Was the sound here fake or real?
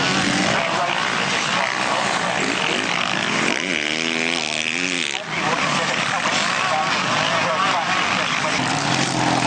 real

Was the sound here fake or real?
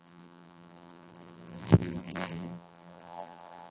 fake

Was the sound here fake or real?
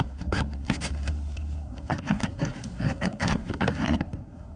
fake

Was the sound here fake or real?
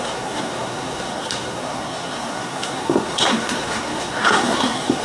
fake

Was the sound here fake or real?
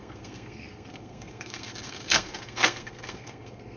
fake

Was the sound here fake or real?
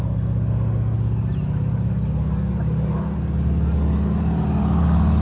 real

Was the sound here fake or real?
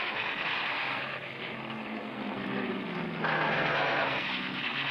fake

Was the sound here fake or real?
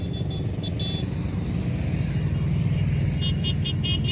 real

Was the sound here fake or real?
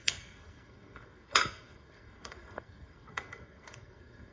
fake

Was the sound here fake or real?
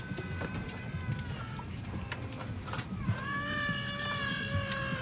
real